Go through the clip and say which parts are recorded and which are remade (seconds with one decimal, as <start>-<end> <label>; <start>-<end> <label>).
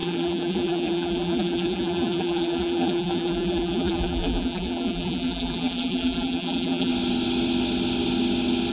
0.0-6.9 remade; 6.9-8.7 recorded